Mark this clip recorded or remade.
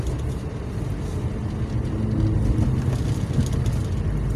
recorded